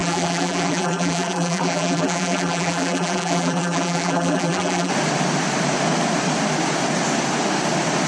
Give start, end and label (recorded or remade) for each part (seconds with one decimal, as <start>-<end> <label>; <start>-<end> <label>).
0.0-4.9 remade; 4.9-8.1 recorded

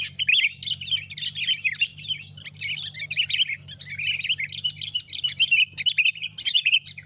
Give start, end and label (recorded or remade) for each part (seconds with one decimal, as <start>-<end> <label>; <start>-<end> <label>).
0.0-6.5 recorded; 6.5-7.1 remade

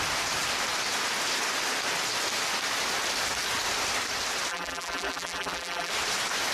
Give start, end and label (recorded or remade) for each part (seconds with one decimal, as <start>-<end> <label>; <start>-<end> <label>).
0.0-4.5 recorded; 4.5-5.9 remade; 5.9-6.5 recorded

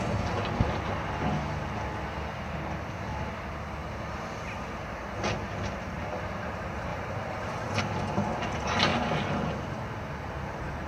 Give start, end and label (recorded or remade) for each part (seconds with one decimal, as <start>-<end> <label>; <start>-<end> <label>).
0.0-3.8 recorded; 3.8-4.4 remade; 4.4-6.9 recorded; 6.9-7.8 remade; 7.8-10.9 recorded

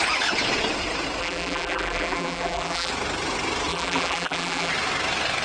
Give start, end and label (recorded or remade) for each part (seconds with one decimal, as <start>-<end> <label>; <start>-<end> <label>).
0.0-1.2 recorded; 1.2-2.9 remade; 2.9-3.7 recorded; 3.7-4.7 remade; 4.7-5.4 recorded

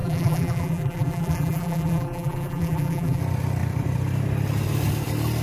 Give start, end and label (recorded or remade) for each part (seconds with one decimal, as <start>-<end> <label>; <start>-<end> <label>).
0.0-3.2 remade; 3.2-5.4 recorded

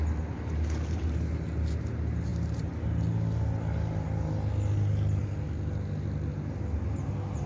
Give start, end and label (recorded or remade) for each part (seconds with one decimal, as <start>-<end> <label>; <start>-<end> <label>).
0.0-7.5 recorded

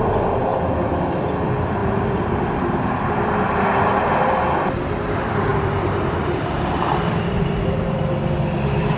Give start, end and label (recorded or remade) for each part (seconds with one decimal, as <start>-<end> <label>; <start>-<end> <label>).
0.0-1.8 remade; 1.8-4.1 recorded; 4.1-9.0 remade